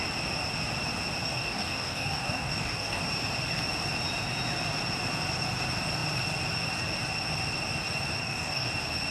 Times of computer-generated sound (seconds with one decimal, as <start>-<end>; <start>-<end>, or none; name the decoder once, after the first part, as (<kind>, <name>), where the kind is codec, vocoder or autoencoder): 1.2-3.0 (codec, DAC); 8.2-8.7